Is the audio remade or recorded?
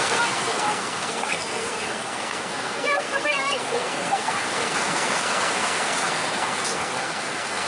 remade